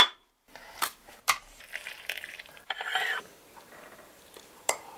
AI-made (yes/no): yes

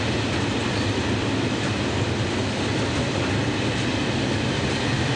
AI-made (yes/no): no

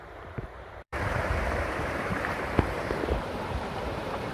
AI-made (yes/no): yes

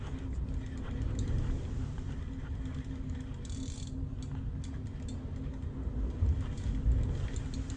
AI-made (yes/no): no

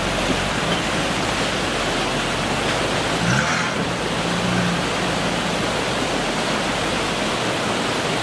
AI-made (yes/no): no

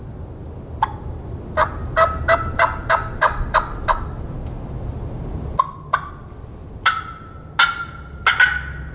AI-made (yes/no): no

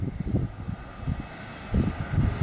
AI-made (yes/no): no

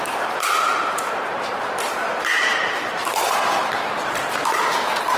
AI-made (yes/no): yes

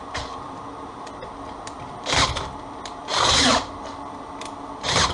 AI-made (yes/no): yes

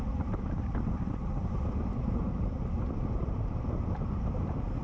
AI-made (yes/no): yes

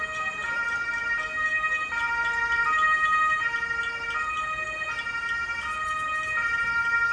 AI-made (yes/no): no